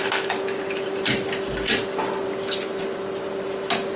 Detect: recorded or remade recorded